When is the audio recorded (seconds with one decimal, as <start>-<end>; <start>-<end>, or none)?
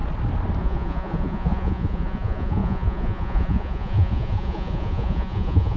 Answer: 0.0-0.6